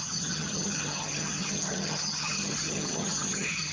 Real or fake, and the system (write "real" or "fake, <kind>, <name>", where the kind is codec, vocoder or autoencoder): fake, vocoder, HiFi-GAN